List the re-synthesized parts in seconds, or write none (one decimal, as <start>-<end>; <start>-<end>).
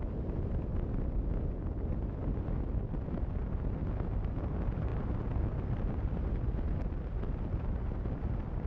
none